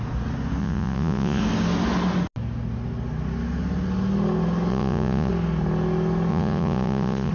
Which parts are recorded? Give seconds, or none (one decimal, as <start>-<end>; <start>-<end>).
0.0-0.6; 1.4-4.7; 5.3-6.3